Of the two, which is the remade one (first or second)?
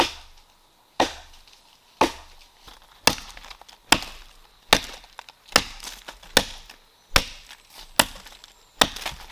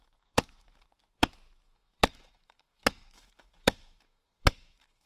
second